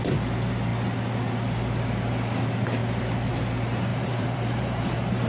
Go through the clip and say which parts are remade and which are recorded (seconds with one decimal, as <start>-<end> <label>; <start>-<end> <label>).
0.0-3.9 recorded; 3.9-5.3 remade